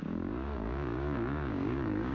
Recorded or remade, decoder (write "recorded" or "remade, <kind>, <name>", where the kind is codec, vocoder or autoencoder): remade, codec, DAC